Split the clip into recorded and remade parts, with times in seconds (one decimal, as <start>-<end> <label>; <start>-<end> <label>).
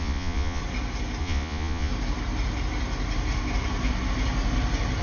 0.0-0.6 remade; 0.6-1.2 recorded; 1.2-1.9 remade; 1.9-5.0 recorded